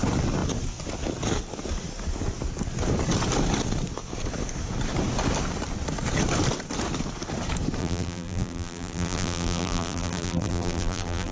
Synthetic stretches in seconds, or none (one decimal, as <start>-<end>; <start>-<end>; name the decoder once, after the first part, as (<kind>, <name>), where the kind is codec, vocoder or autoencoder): 7.8-11.3 (vocoder, BigVGAN v2)